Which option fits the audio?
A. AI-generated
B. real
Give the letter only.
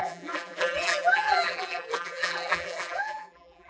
A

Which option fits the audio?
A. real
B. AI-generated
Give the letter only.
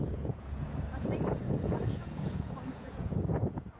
B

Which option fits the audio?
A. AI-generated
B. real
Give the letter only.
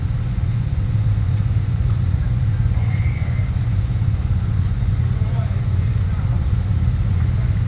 A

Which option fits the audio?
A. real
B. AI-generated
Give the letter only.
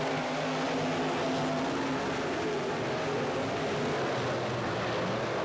A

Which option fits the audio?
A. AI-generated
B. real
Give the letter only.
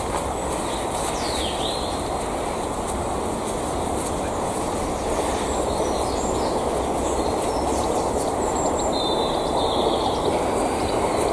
B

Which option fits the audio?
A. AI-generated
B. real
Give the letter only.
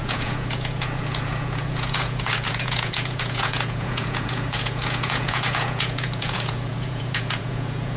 A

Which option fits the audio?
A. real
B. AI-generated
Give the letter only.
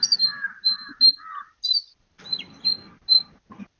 A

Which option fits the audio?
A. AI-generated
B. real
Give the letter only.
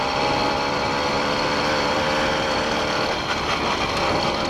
B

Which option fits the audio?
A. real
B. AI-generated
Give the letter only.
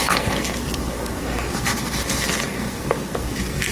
B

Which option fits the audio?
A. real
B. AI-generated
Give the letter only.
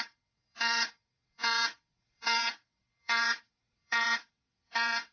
B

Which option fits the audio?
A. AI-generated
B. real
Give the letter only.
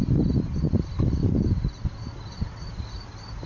B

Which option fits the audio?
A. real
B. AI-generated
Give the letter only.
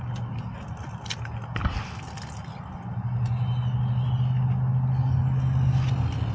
A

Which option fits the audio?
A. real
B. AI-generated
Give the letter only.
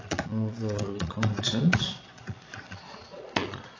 B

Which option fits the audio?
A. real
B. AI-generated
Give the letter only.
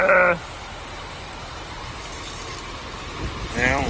B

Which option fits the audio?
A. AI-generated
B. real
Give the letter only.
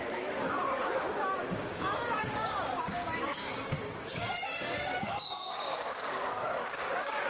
A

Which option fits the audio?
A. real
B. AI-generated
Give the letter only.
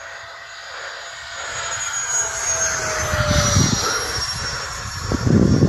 A